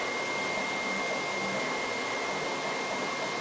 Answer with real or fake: real